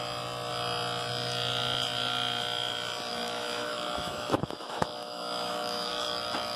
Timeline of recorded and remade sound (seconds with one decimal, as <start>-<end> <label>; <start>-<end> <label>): 0.0-3.1 recorded; 3.1-5.9 remade; 5.9-6.6 recorded